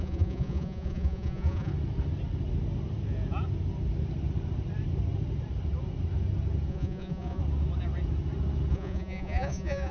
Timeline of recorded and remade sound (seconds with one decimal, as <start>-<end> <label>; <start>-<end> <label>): 0.0-1.7 remade; 1.7-6.7 recorded; 6.7-7.4 remade; 7.4-8.7 recorded; 8.7-9.9 remade